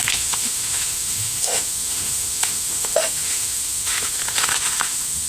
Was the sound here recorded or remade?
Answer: remade